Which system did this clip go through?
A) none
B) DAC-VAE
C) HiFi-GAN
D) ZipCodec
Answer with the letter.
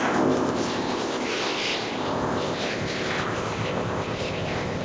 D